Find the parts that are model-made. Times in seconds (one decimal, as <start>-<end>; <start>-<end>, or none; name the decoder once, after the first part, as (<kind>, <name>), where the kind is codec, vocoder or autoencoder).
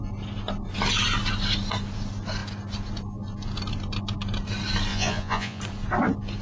4.9-5.6 (vocoder, Vocos)